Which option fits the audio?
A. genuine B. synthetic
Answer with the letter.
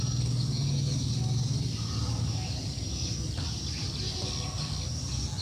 A